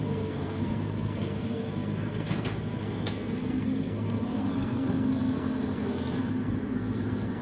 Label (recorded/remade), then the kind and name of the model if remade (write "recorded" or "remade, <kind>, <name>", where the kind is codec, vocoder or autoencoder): remade, codec, SNAC